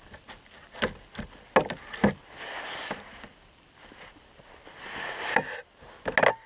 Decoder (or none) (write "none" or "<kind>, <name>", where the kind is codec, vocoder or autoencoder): none